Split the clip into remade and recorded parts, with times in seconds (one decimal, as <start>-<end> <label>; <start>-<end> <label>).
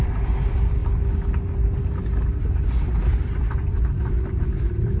0.0-0.8 remade; 0.8-3.1 recorded; 3.1-5.0 remade